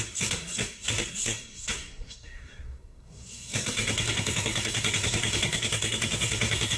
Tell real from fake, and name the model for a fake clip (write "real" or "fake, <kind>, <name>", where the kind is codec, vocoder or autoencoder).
fake, codec, SNAC